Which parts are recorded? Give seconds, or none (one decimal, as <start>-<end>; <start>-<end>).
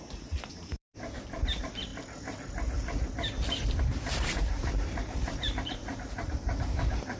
1.9-3.8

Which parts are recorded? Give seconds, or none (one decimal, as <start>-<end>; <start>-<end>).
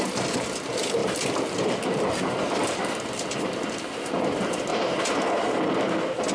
0.0-1.0; 2.0-6.3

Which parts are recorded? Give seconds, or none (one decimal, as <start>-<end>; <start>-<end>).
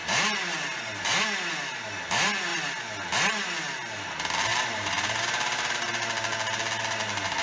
1.2-4.5; 5.9-7.4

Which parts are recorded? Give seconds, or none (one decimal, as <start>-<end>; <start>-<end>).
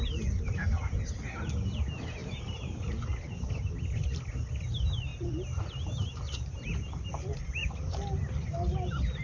0.0-2.2; 2.9-5.1; 7.1-9.2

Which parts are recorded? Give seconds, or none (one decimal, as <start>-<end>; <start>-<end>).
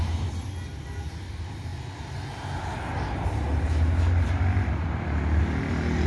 0.0-6.1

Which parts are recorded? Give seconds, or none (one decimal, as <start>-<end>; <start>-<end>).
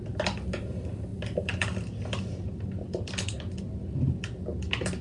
0.0-5.0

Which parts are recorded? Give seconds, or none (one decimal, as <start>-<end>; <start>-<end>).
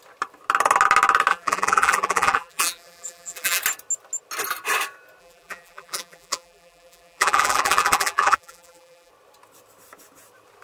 0.0-1.3; 3.6-5.2; 9.1-10.6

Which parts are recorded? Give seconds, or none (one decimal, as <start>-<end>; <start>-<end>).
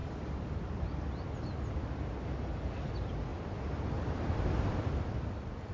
0.0-2.9